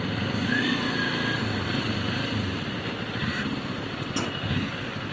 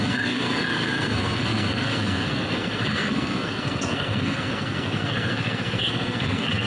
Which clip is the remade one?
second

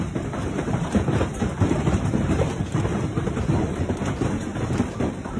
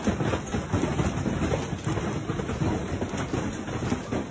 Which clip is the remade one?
first